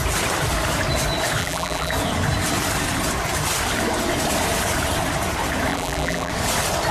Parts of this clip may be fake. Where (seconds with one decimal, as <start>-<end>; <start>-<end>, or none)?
1.4-1.9; 5.7-6.3